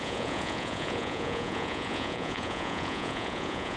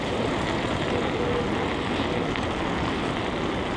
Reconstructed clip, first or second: first